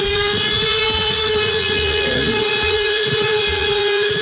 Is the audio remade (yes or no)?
yes